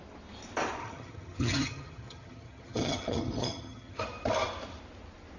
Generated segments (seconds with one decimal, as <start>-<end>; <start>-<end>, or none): 0.8-4.0